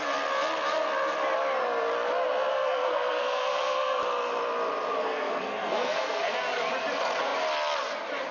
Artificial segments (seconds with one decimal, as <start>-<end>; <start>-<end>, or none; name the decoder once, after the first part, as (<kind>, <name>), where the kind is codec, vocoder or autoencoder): 2.5-4.0 (codec, SNAC); 5.0-6.2